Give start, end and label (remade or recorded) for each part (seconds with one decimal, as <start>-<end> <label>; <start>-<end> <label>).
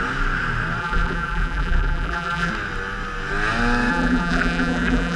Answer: 0.0-0.8 recorded; 0.8-2.5 remade; 2.5-3.9 recorded; 3.9-5.2 remade